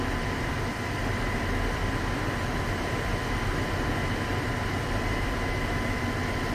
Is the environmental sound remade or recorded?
remade